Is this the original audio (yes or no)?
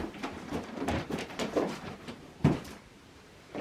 no